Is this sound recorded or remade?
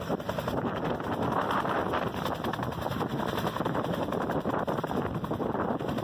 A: recorded